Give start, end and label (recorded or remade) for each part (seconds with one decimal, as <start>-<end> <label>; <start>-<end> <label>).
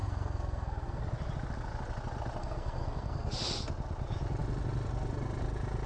0.0-1.0 remade; 1.0-2.4 recorded; 2.4-3.3 remade; 3.3-5.9 recorded